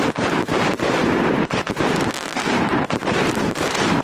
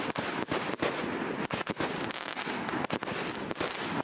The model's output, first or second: first